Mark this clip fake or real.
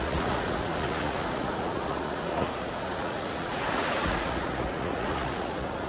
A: fake